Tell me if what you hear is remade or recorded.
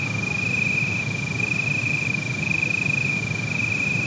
recorded